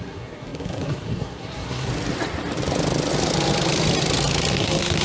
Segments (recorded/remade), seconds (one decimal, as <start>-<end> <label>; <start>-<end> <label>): 0.0-1.9 remade; 1.9-4.5 recorded; 4.5-5.0 remade